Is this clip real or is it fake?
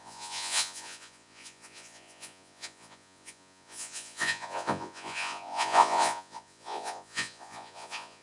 fake